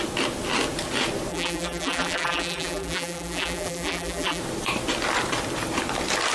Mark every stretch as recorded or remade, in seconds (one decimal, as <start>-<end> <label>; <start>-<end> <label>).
0.0-1.3 recorded; 1.3-4.4 remade; 4.4-6.3 recorded